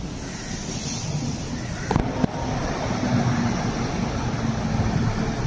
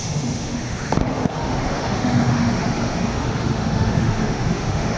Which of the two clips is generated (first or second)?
second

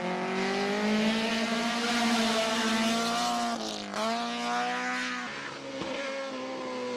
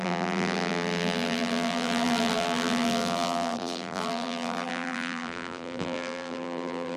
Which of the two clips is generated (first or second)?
second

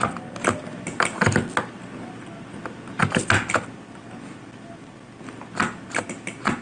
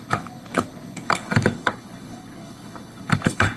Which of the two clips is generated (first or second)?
second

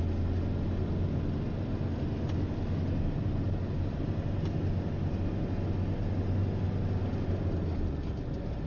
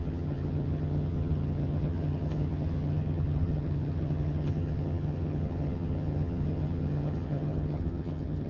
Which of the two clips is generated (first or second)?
second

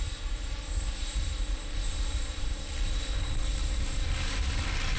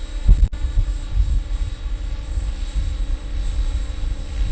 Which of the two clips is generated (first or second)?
first